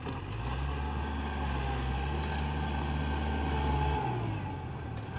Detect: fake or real real